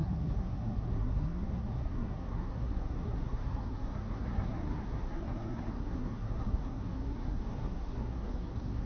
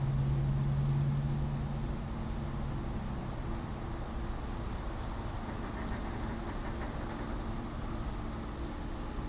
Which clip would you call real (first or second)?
second